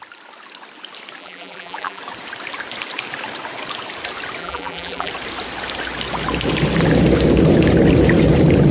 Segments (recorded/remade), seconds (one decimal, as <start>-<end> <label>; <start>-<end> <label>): 0.0-1.2 recorded; 1.2-2.0 remade; 2.0-4.4 recorded; 4.4-5.1 remade; 5.1-8.7 recorded